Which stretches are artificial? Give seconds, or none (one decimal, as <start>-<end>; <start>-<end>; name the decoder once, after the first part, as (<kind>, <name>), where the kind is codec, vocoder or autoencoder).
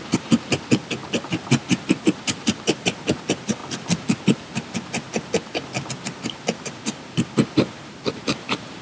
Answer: 0.0-3.6 (vocoder, BigVGAN v2); 5.9-8.8